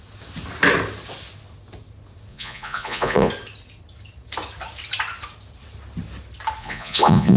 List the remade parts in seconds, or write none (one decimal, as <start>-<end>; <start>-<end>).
2.3-3.3; 6.6-7.4